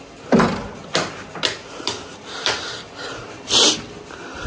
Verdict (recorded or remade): recorded